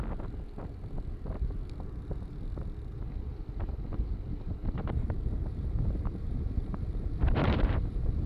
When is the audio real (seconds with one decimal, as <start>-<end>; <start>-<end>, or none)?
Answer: 0.0-4.6